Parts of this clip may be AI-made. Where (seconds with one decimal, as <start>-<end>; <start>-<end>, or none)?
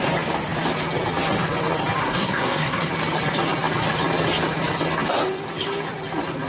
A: 2.0-2.9